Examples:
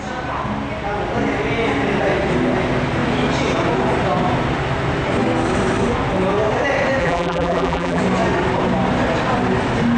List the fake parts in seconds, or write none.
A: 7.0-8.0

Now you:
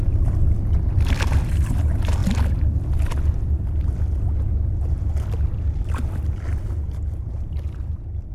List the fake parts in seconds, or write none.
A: 0.0-0.4; 1.4-2.2; 7.2-8.3

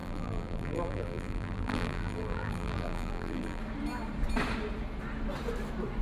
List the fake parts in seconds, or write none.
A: 0.0-3.6